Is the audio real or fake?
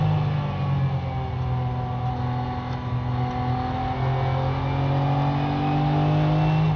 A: real